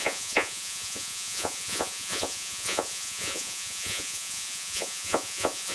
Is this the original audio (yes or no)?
no